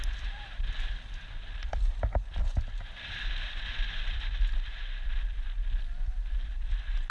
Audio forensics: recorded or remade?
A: remade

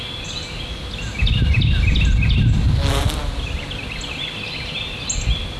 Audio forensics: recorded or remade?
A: recorded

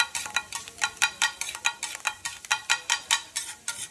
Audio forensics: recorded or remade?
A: remade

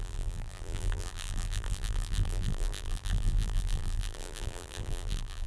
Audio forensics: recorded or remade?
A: remade